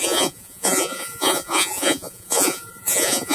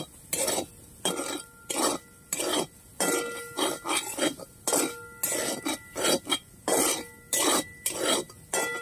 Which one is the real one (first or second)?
second